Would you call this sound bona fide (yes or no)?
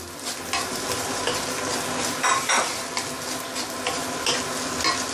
yes